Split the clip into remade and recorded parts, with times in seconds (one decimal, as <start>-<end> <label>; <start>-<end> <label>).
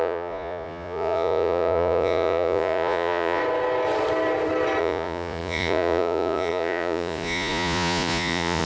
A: 0.0-3.4 remade; 3.4-4.8 recorded; 4.8-8.6 remade